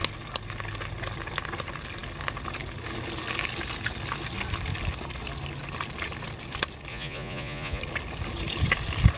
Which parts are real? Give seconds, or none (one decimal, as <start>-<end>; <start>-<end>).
0.0-6.9; 7.8-9.2